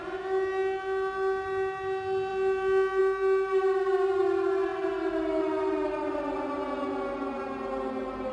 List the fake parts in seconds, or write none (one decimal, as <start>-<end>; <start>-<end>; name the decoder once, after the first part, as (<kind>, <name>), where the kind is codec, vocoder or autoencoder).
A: none